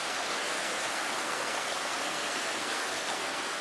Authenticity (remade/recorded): remade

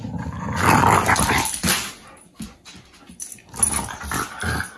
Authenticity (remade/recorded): recorded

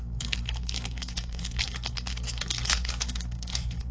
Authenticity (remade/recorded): remade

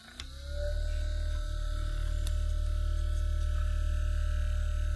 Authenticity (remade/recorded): recorded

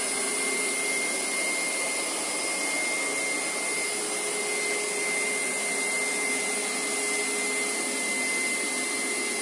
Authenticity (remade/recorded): recorded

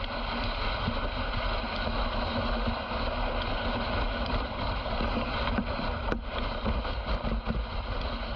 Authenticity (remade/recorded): recorded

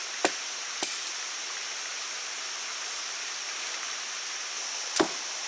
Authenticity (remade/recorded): recorded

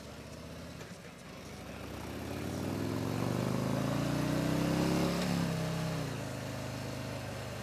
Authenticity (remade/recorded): recorded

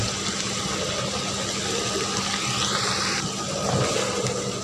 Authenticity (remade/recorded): recorded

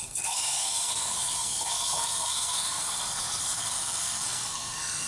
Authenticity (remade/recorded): remade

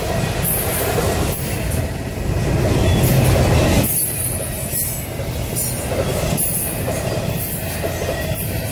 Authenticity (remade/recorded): recorded